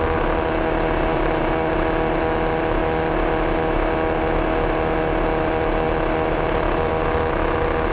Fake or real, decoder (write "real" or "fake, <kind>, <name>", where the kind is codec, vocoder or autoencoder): real